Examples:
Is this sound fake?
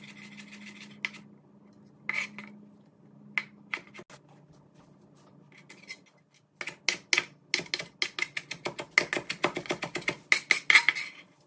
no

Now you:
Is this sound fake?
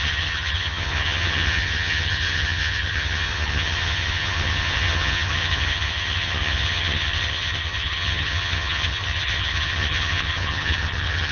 yes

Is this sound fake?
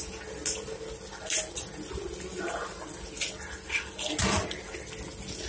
no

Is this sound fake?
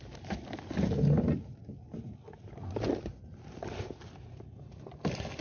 no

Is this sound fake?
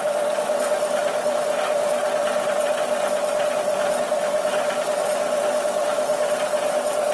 no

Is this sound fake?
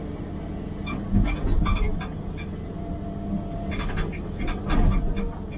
no